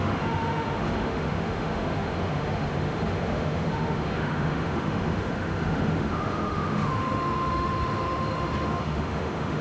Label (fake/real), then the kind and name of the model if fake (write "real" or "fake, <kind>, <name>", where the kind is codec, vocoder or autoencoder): fake, autoencoder, DAC-VAE